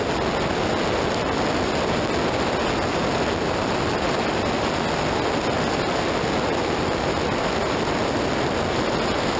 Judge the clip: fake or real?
real